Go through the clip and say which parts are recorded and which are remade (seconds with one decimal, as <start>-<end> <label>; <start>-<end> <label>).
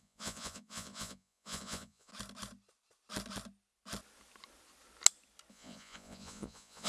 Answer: 0.0-2.1 remade; 2.1-5.5 recorded; 5.5-6.9 remade